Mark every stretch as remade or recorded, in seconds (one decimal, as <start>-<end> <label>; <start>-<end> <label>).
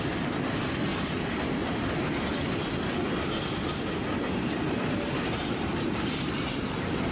0.0-7.1 recorded